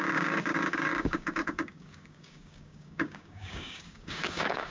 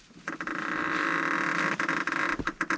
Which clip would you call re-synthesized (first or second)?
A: first